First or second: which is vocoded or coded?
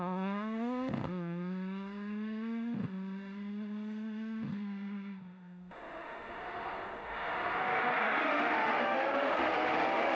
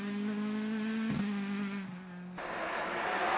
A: first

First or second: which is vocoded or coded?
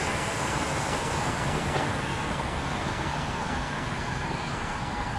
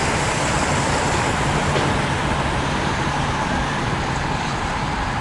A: first